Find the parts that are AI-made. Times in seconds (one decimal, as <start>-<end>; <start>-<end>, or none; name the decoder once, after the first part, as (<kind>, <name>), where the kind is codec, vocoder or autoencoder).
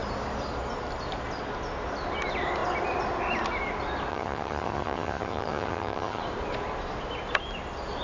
4.1-6.2 (vocoder, HiFi-GAN)